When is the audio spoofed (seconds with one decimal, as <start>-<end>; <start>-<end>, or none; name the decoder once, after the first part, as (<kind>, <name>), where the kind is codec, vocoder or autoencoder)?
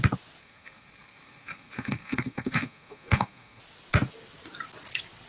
0.4-3.6 (codec, SNAC)